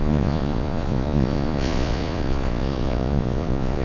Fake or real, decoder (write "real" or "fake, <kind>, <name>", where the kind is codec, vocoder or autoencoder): fake, vocoder, Vocos